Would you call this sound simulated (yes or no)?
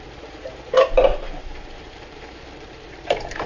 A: yes